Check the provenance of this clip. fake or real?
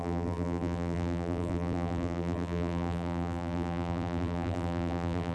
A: fake